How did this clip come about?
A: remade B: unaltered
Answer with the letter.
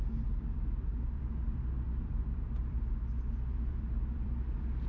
A